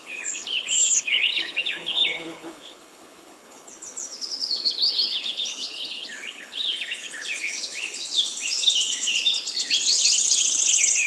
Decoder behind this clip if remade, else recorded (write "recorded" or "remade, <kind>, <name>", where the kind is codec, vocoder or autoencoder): remade, codec, HILCodec